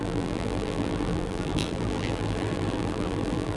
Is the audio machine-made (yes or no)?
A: yes